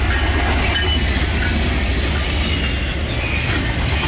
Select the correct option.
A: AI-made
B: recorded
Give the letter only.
B